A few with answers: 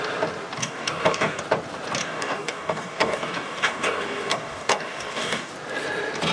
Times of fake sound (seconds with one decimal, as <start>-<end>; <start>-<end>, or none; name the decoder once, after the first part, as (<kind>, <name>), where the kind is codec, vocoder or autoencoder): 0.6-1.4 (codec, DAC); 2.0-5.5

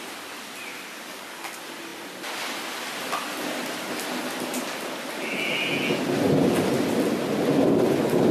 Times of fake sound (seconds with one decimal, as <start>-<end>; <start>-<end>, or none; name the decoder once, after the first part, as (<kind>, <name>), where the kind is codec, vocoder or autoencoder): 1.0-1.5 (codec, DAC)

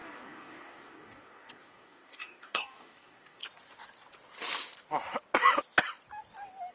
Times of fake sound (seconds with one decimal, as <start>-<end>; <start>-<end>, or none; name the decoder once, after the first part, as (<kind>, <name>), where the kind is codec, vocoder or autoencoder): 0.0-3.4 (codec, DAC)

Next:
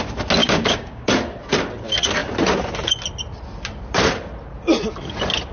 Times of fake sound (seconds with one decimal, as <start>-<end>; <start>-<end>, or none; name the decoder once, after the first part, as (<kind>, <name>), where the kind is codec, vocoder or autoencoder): 0.4-1.1 (codec, DAC)